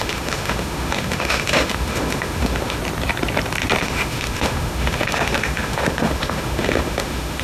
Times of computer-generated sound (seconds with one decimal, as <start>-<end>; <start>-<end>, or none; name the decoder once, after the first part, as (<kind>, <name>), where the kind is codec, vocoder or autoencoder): 0.0-2.8 (autoencoder, DAC-VAE); 3.8-7.4